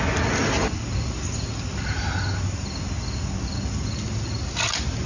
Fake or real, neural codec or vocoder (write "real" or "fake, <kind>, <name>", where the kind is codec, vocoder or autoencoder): real